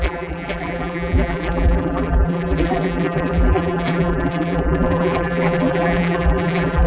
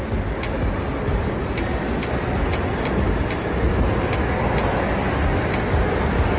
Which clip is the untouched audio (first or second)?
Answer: second